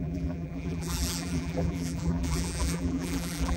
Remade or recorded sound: remade